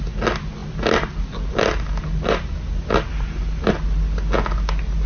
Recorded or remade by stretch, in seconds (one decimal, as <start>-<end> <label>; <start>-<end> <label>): 0.0-5.1 recorded